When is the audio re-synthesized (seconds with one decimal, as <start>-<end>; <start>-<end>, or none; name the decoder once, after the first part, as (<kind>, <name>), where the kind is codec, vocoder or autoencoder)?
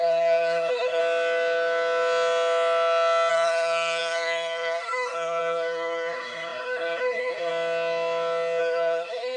0.0-1.0 (codec, SNAC); 3.3-7.5; 8.6-9.4